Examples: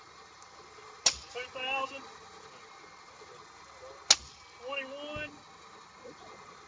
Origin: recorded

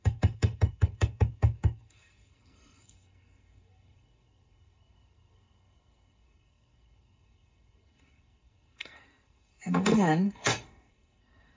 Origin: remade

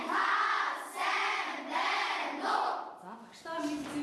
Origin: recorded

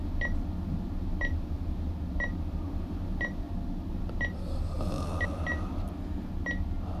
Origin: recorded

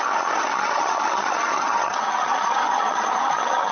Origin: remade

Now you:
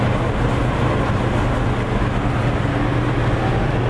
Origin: recorded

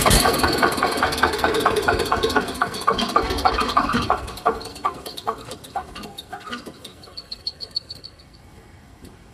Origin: remade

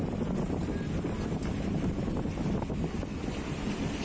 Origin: recorded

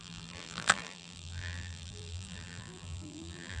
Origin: remade